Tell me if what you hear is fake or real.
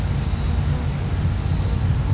real